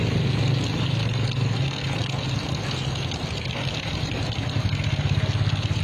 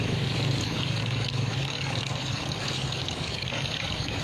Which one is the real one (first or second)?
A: first